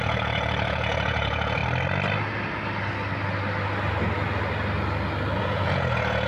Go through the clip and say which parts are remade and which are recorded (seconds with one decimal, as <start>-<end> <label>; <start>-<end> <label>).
0.0-1.6 remade; 1.6-5.4 recorded; 5.4-6.3 remade